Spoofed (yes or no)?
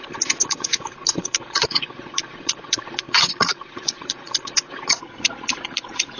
yes